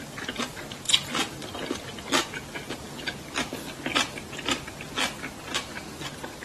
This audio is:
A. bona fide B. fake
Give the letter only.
A